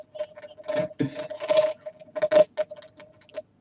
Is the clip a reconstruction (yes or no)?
no